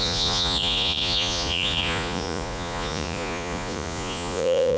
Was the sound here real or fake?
fake